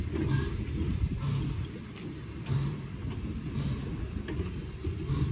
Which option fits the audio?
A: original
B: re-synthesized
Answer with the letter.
A